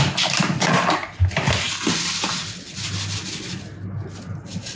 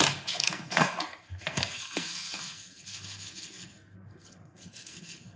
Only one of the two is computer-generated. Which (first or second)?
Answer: second